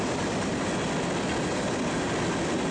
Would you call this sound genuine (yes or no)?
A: yes